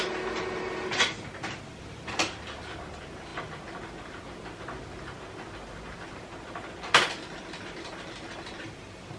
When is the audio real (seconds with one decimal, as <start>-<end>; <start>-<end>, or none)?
0.0-9.2